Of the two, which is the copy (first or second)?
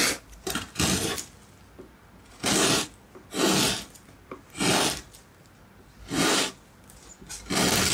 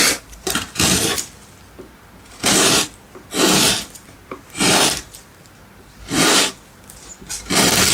second